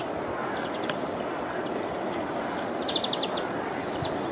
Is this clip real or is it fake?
real